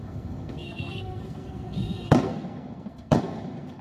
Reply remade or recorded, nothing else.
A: remade